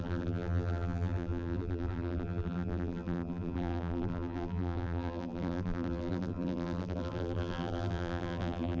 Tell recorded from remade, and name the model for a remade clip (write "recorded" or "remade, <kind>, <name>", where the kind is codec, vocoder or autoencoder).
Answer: remade, vocoder, BigVGAN v2